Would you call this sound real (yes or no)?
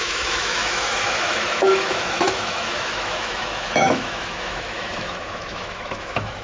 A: no